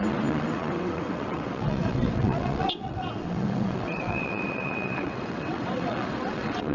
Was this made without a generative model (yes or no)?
no